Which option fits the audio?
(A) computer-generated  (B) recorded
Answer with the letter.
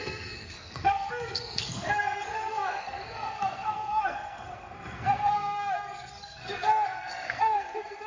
A